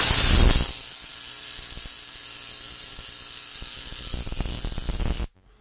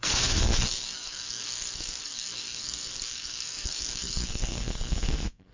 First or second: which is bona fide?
first